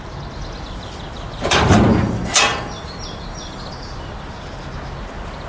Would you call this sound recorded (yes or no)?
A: yes